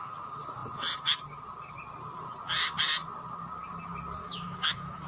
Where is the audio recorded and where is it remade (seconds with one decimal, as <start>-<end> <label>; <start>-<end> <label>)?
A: 0.0-4.2 recorded; 4.2-5.1 remade